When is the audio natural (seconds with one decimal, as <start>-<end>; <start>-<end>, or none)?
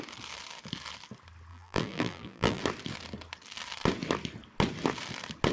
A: 0.0-1.5; 2.6-5.5